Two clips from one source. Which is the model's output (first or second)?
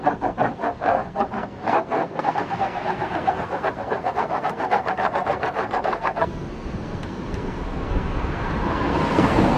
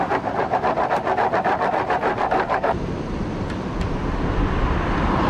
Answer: first